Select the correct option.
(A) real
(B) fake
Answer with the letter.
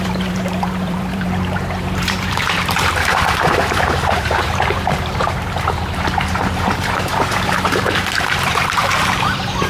B